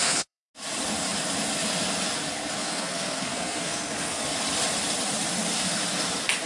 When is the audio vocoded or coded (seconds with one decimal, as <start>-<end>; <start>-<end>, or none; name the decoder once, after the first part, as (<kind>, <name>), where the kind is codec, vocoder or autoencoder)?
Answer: 0.0-0.5 (codec, SNAC); 2.6-4.2